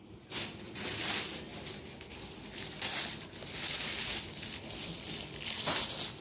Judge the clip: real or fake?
real